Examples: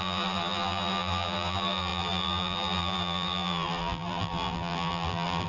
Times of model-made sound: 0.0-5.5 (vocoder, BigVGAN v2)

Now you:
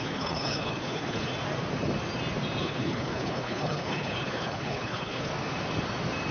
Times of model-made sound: 0.0-1.3 (codec, HILCodec); 2.6-5.3

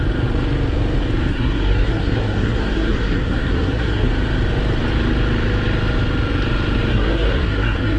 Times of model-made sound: 1.3-4.1 (codec, SNAC); 6.9-8.0

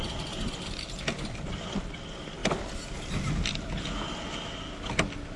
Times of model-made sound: none

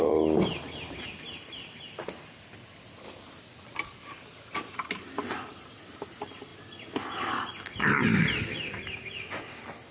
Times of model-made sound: none

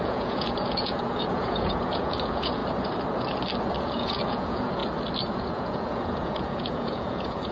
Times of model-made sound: 0.0-2.6 (vocoder, Vocos); 3.8-4.8; 5.3-7.5

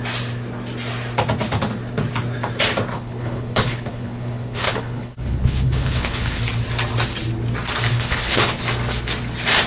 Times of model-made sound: 2.9-6.4 (codec, HILCodec); 7.9-8.6

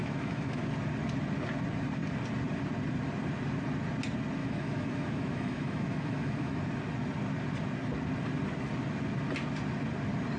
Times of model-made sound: 0.0-0.6 (autoencoder, DAC-VAE); 4.4-6.6